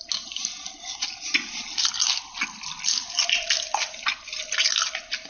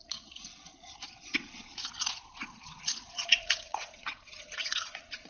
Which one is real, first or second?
first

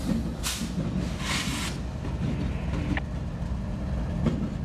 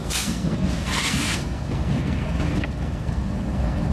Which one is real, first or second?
first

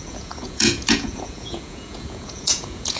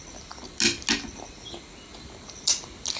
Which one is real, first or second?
second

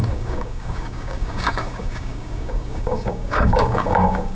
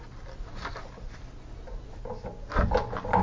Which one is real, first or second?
second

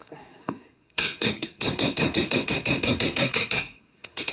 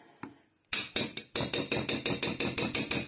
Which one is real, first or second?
second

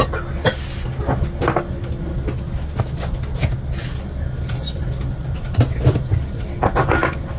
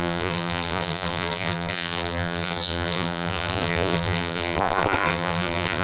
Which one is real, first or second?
first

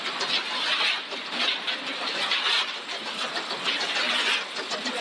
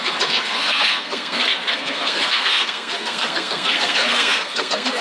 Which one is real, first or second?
first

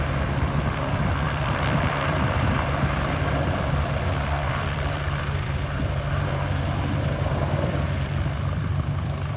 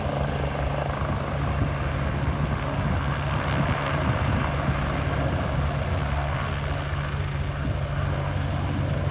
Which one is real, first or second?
second